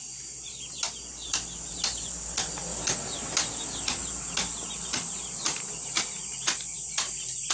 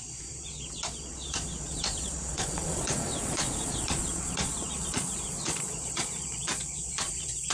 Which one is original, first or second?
first